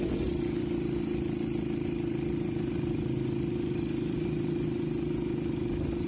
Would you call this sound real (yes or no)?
yes